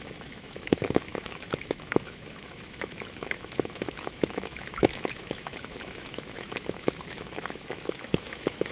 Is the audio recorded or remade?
remade